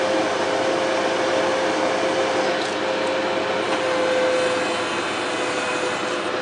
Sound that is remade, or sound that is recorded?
recorded